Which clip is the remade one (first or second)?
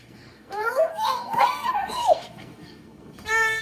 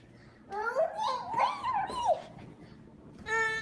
first